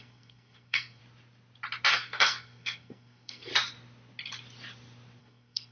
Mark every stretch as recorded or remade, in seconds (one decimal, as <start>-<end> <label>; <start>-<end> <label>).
0.0-1.0 remade; 1.0-1.9 recorded; 1.9-3.5 remade; 3.5-5.2 recorded; 5.2-5.7 remade